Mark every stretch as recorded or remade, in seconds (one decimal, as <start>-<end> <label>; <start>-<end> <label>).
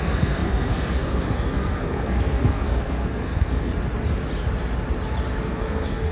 0.0-3.7 remade; 3.7-5.4 recorded; 5.4-6.1 remade